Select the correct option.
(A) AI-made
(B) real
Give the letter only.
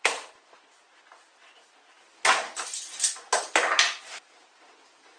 B